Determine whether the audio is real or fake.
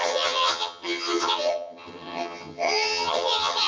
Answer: fake